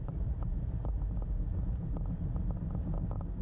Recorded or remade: recorded